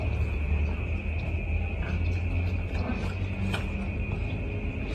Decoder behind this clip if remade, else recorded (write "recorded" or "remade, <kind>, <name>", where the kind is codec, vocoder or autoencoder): recorded